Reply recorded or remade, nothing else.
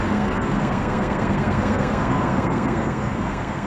remade